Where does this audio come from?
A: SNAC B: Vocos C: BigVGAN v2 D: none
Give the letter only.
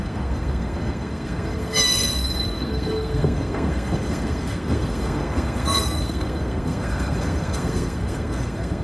A